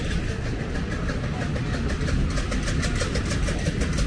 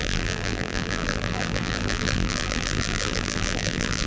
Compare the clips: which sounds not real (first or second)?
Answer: second